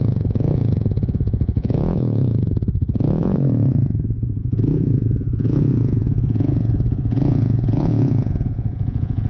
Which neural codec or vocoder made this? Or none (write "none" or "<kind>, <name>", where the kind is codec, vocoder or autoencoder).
vocoder, Vocos